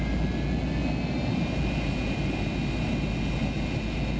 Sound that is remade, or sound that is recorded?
recorded